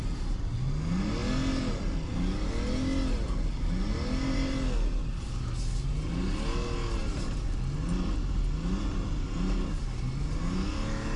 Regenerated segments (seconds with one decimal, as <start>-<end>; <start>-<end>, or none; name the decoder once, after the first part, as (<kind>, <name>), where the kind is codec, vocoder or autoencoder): none